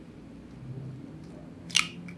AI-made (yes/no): no